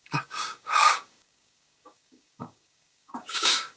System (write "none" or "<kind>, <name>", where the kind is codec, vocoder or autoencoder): codec, DAC